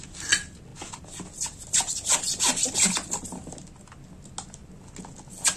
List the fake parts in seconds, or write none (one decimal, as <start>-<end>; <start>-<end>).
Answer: none

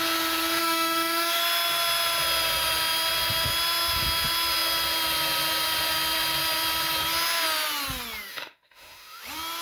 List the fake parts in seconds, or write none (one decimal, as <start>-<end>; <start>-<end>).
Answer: 0.6-1.4; 8.3-9.2

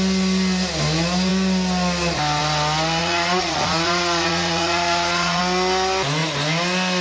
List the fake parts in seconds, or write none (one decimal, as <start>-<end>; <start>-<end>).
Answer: 3.0-5.4

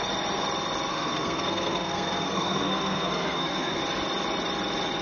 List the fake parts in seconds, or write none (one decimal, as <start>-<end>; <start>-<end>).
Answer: 0.9-3.8